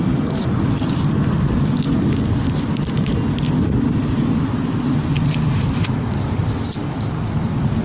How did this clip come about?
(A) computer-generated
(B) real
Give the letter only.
B